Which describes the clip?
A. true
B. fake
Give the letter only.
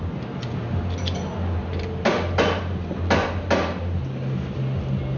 A